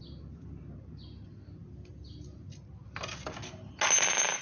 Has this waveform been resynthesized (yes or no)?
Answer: no